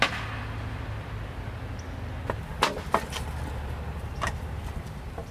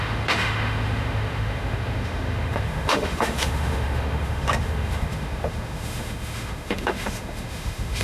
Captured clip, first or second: first